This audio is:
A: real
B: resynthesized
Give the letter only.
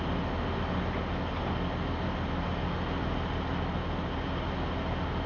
A